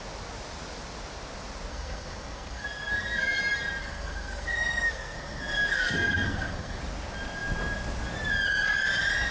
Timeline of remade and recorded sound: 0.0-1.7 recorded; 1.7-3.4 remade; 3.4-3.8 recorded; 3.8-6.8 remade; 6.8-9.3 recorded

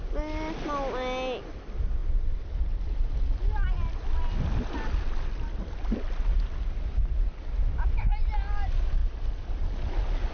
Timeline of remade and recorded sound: 0.0-10.3 recorded

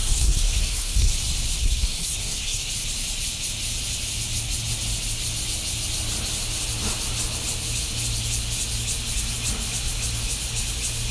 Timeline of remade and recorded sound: 0.0-1.1 remade; 1.1-1.6 recorded; 1.6-2.7 remade; 2.7-11.1 recorded

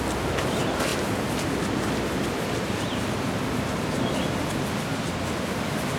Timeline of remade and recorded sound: 0.0-6.0 recorded

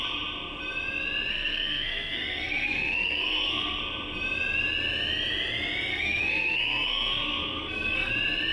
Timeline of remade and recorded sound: 0.0-1.3 recorded; 1.3-3.8 remade; 3.8-5.9 recorded; 5.9-8.1 remade; 8.1-8.5 recorded

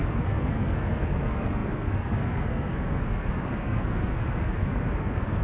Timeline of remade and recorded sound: 0.0-5.4 remade

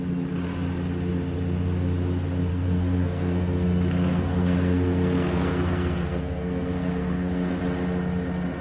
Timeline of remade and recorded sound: 0.0-2.5 recorded; 2.5-7.6 remade; 7.6-8.6 recorded

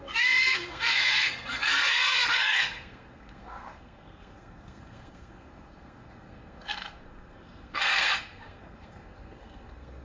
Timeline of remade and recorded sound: 0.0-10.0 remade